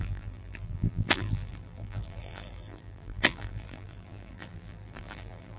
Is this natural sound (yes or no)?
no